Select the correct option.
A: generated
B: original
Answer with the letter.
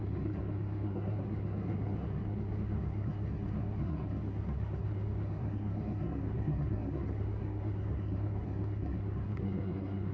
A